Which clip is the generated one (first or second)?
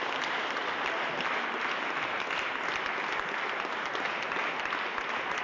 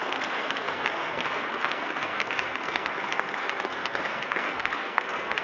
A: second